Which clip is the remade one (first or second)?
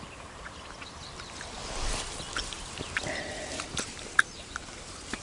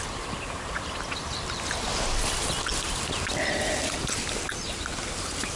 first